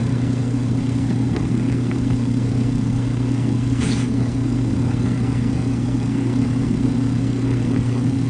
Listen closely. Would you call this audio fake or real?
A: fake